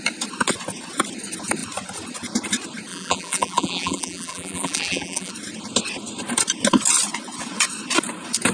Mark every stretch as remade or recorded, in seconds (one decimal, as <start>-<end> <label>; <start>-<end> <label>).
0.0-2.9 recorded; 2.9-5.3 remade; 5.3-8.5 recorded

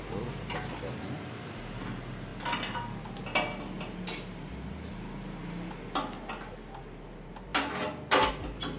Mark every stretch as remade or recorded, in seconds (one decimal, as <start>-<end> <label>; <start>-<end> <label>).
0.0-8.8 recorded

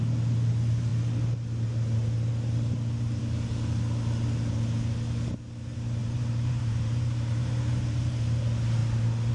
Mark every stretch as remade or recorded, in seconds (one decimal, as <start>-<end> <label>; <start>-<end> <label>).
0.0-6.0 recorded; 6.0-8.2 remade; 8.2-9.3 recorded

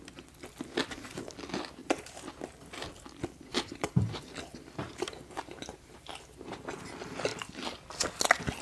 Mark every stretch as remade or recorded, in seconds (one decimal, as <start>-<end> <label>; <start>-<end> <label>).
0.0-1.8 recorded; 1.8-2.3 remade; 2.3-3.5 recorded; 3.5-6.1 remade; 6.1-8.6 recorded

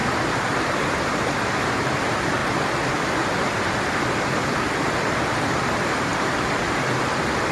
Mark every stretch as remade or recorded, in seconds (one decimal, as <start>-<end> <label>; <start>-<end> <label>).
0.0-2.4 remade; 2.4-5.3 recorded; 5.3-7.5 remade

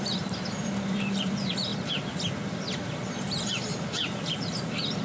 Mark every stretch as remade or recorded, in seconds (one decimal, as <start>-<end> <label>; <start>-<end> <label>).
0.0-1.7 remade; 1.7-3.2 recorded; 3.2-5.0 remade

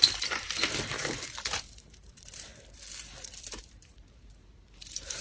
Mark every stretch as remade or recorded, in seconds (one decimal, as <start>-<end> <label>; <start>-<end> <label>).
0.0-2.5 remade; 2.5-3.6 recorded; 3.6-5.2 remade